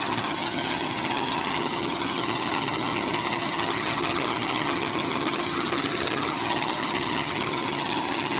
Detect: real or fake fake